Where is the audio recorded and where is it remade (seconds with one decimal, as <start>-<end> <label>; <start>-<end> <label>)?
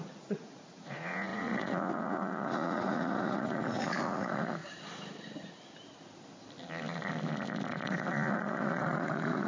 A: 0.0-4.6 remade; 4.6-7.7 recorded; 7.7-9.5 remade